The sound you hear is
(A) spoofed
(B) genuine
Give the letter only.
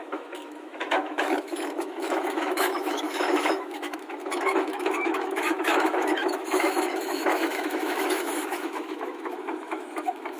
A